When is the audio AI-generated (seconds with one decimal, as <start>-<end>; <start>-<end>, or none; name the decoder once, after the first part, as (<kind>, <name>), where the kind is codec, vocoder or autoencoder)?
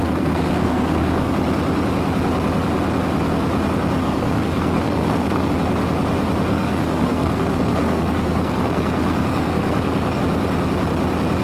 0.0-1.3 (codec, SNAC); 4.0-5.5; 6.5-10.2